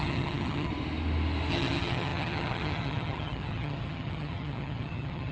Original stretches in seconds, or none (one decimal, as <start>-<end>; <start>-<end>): 0.7-1.5